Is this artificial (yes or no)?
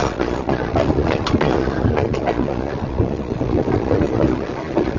yes